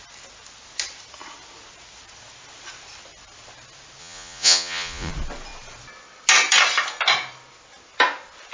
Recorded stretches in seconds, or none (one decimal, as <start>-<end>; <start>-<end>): 0.0-4.0; 5.1-8.5

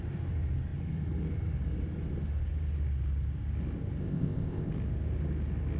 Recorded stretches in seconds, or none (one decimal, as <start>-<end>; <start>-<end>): 0.0-4.0; 4.7-5.8

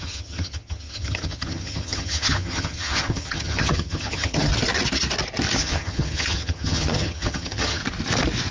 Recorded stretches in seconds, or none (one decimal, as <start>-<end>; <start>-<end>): 4.5-5.6; 7.8-8.5

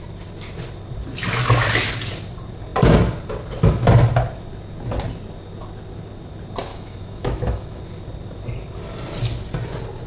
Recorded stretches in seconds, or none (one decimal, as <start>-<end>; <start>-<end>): 0.0-6.7; 7.8-10.1

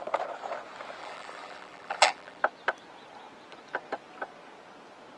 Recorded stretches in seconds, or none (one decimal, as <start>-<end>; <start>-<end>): 0.0-1.0; 2.4-5.2

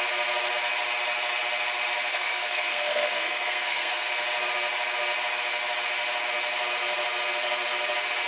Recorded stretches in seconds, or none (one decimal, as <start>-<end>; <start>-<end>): 0.0-2.1; 4.1-8.3